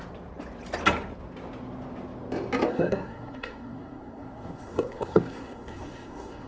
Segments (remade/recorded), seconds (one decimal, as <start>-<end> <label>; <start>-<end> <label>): 0.0-2.7 recorded; 2.7-6.5 remade